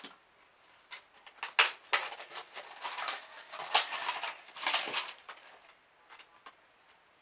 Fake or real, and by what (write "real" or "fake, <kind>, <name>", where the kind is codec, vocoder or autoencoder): real